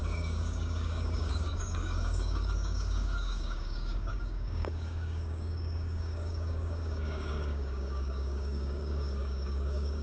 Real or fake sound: fake